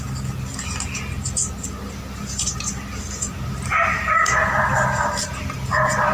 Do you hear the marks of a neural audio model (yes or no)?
no